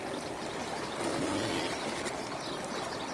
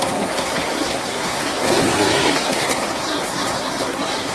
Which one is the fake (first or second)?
second